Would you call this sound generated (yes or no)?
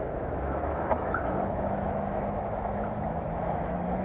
yes